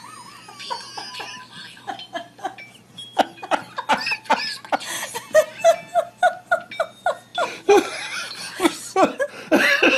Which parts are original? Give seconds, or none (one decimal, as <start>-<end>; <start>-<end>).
0.0-7.3; 8.0-10.0